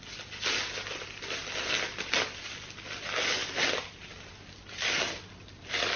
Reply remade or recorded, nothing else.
recorded